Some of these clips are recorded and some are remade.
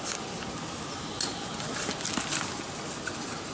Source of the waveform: recorded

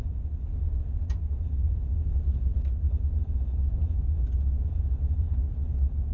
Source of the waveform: recorded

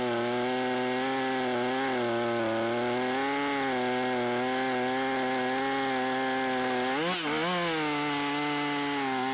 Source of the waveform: recorded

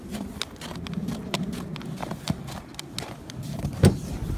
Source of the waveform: recorded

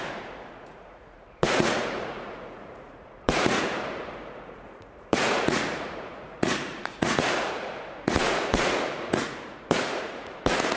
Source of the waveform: remade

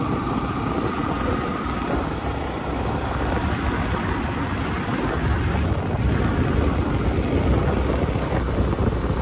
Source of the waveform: recorded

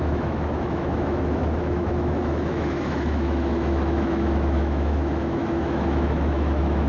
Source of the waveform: remade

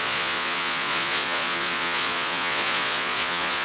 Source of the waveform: remade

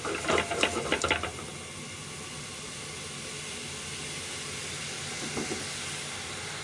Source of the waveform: recorded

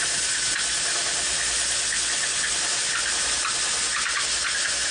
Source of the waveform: recorded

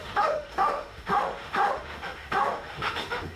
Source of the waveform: remade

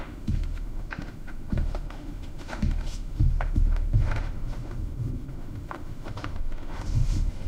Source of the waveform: remade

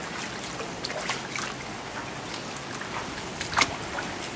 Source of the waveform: recorded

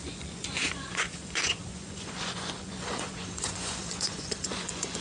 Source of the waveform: remade